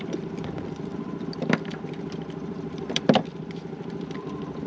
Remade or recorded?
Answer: remade